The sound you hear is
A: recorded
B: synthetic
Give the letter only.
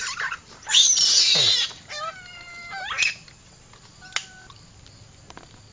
A